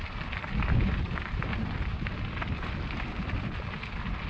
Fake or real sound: real